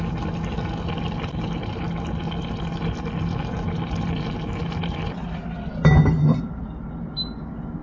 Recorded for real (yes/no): yes